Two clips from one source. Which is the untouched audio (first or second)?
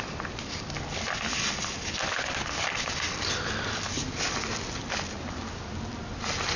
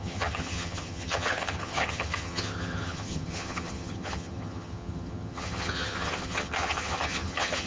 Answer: first